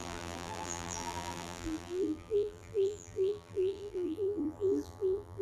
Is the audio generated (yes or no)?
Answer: yes